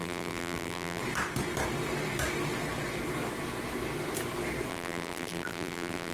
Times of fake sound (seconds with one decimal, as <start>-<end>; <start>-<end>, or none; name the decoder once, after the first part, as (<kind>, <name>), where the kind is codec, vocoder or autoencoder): 0.0-1.0 (vocoder, BigVGAN v2); 4.7-6.1